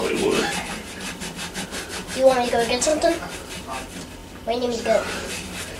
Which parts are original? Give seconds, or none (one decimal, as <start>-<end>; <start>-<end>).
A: 0.0-5.8